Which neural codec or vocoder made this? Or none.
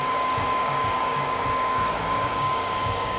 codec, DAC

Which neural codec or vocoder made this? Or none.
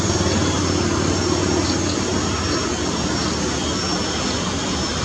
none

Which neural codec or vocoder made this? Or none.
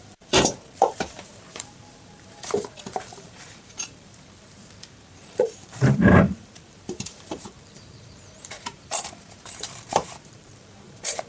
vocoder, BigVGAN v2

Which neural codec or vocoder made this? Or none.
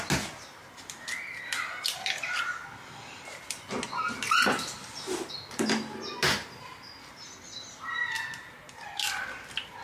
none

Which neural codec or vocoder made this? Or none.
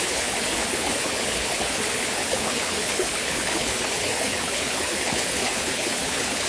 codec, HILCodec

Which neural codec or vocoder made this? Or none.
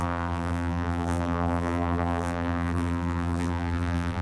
vocoder, BigVGAN v2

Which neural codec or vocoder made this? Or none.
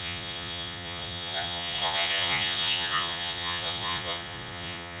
vocoder, Vocos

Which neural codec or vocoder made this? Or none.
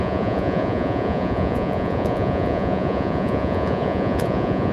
vocoder, Vocos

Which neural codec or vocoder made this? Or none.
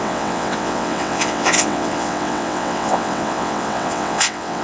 vocoder, WaveNeXt